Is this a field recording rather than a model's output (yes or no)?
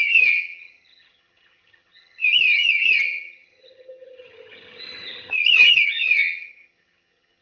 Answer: no